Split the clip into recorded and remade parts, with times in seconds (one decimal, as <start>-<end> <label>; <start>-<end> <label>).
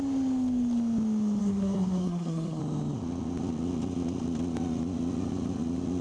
0.0-1.4 recorded; 1.4-2.6 remade; 2.6-6.0 recorded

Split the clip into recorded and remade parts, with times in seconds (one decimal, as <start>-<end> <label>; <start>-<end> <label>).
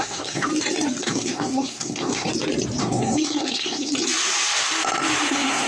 0.0-0.5 remade; 0.5-1.0 recorded; 1.0-2.3 remade; 2.3-2.8 recorded; 2.8-3.9 remade; 3.9-5.3 recorded; 5.3-5.7 remade